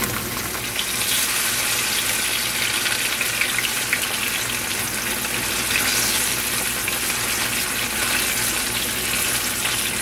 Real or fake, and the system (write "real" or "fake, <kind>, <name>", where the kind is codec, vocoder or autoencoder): real